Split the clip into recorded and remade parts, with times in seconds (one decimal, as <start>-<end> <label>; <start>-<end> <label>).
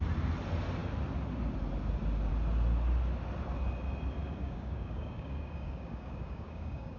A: 0.0-4.2 recorded; 4.2-7.0 remade